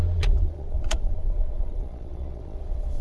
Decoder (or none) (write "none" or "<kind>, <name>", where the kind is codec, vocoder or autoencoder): vocoder, Vocos